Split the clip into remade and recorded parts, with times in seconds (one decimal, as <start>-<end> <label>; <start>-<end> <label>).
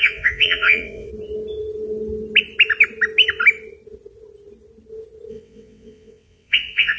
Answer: 0.0-1.1 remade; 1.1-5.3 recorded; 5.3-7.0 remade